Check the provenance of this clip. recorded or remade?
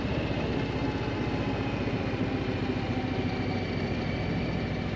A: recorded